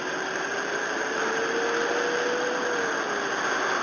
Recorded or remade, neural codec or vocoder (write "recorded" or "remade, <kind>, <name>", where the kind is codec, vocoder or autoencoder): recorded